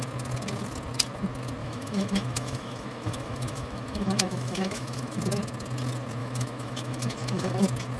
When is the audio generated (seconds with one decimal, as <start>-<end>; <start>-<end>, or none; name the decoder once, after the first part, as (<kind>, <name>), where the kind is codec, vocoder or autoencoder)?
1.6-5.2 (autoencoder, DAC-VAE); 6.2-7.6